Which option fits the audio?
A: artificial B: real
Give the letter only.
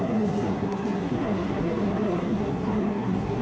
A